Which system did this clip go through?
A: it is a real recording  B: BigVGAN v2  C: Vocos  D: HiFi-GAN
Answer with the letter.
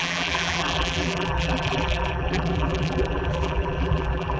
B